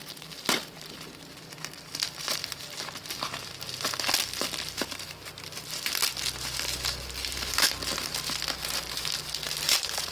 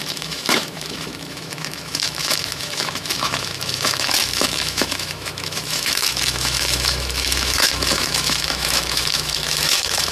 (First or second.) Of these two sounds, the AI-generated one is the second